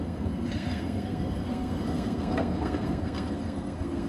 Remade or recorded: remade